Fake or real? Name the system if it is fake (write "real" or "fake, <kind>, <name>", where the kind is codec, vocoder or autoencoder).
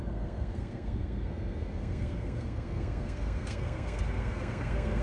fake, codec, SNAC